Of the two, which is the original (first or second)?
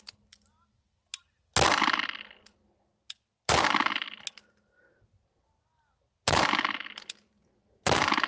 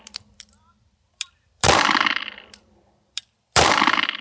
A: first